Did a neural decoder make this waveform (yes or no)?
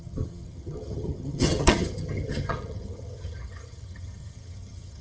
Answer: yes